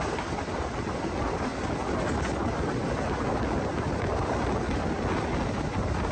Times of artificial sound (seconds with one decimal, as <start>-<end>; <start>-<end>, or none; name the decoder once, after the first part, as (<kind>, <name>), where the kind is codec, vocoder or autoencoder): 3.7-4.5 (vocoder, BigVGAN v2)